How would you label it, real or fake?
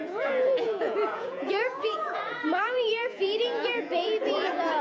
fake